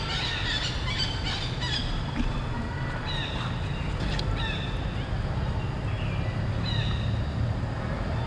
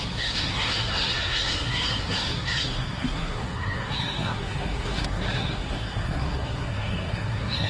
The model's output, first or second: second